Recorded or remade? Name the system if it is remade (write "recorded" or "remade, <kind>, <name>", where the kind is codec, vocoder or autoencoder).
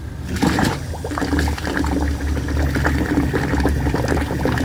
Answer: recorded